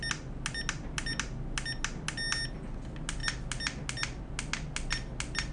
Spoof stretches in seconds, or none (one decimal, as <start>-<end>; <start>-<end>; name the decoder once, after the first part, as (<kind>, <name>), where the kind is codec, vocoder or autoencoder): none